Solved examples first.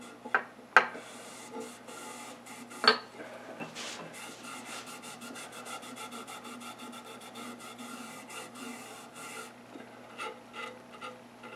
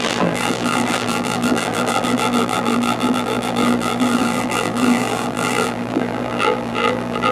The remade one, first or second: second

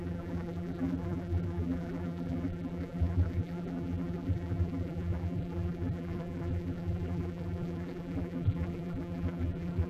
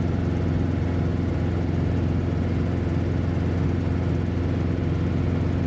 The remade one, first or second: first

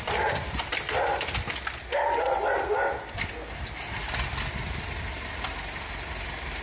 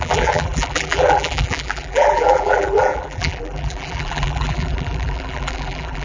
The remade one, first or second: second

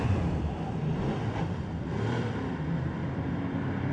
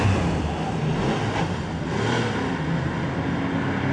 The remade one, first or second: first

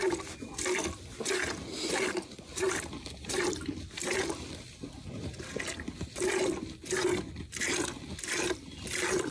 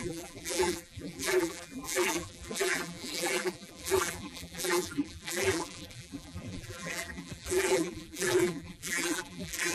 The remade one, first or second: second